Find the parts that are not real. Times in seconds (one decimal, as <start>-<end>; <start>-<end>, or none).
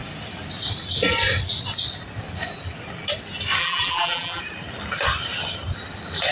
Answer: 3.6-4.4